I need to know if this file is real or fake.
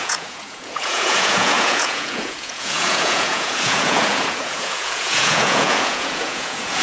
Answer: fake